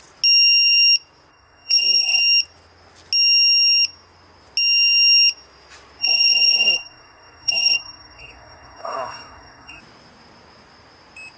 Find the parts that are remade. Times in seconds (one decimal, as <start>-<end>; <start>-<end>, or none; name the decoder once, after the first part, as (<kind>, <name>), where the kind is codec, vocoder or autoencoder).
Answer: 1.3-2.2 (codec, SNAC); 6.0-9.8